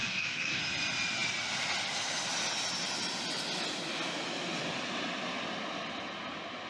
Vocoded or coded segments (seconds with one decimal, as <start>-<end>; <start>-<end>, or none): 0.0-0.6

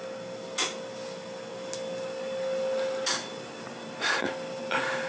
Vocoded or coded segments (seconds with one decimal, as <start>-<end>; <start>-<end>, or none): none